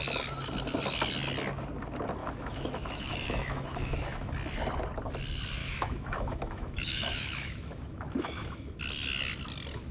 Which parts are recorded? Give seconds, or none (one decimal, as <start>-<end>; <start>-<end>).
0.0-2.2; 4.3-5.6; 8.8-9.9

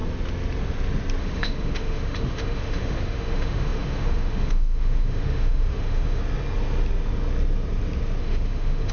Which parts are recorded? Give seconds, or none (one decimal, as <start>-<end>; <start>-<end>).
0.0-1.2; 6.2-8.2

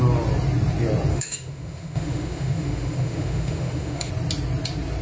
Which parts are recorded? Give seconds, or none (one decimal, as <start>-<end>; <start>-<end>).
0.0-1.1; 4.1-5.0

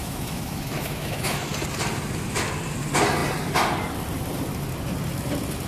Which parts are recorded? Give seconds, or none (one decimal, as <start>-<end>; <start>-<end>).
1.5-5.7

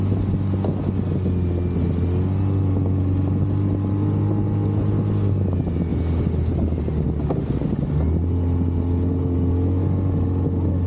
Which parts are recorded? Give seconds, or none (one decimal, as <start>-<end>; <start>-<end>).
0.0-10.9

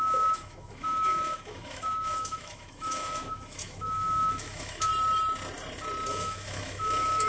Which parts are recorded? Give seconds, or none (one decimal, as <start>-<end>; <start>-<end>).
4.9-6.1